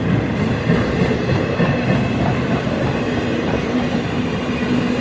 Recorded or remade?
remade